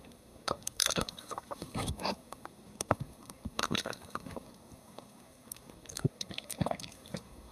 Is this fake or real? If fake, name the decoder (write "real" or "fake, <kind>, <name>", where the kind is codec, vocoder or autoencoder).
fake, codec, SNAC